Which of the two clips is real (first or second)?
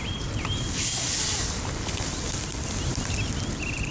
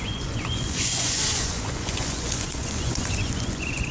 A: first